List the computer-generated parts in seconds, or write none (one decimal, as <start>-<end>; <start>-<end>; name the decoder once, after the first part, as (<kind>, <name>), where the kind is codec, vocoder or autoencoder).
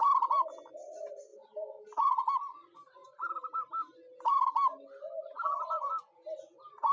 none